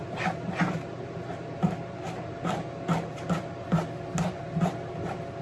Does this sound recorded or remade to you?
recorded